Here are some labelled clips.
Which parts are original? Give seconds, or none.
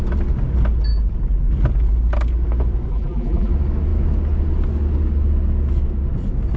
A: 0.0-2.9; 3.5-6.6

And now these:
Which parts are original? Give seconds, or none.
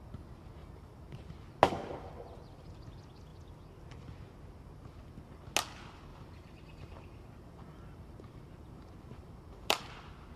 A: 0.0-0.6; 1.3-6.1; 9.9-10.4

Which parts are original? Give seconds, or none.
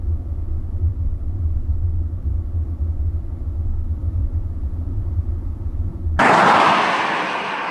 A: 0.0-4.0; 6.0-7.7